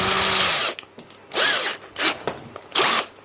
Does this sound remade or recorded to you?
recorded